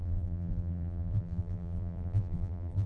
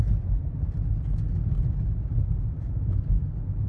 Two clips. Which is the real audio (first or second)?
second